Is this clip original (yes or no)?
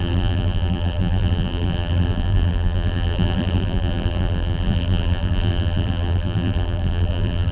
no